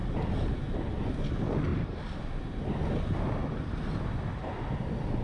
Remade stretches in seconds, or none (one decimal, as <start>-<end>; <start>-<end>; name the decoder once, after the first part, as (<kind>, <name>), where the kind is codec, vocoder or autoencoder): 0.0-0.6 (vocoder, BigVGAN v2); 1.7-2.2; 3.4-4.1